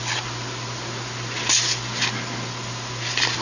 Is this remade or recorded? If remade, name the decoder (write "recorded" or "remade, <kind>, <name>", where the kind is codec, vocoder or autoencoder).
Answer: recorded